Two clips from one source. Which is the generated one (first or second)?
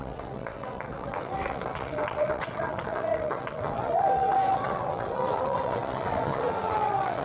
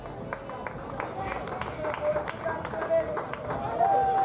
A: first